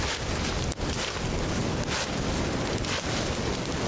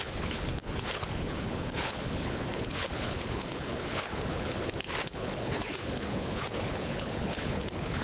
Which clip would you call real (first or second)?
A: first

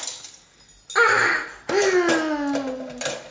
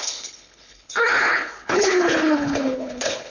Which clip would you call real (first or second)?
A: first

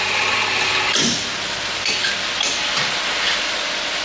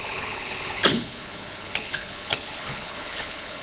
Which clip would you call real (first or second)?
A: first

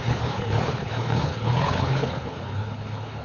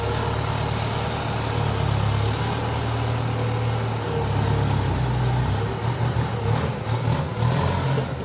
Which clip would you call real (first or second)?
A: second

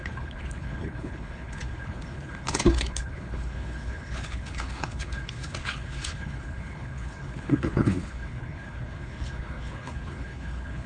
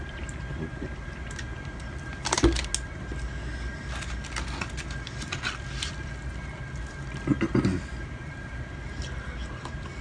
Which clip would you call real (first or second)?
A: second